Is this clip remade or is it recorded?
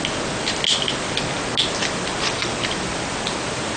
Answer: recorded